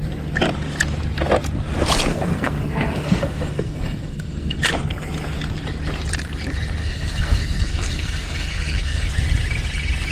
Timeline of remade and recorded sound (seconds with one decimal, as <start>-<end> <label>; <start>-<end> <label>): 0.0-2.1 recorded; 2.1-4.6 remade; 4.6-6.8 recorded; 6.8-9.1 remade; 9.1-10.1 recorded